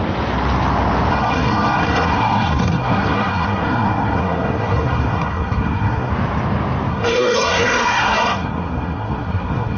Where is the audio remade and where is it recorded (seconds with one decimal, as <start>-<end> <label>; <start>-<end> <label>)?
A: 0.0-1.1 recorded; 1.1-6.1 remade; 6.1-6.9 recorded; 6.9-9.8 remade